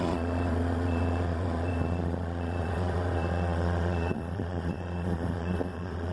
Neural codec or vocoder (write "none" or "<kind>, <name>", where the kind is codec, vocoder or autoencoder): vocoder, Vocos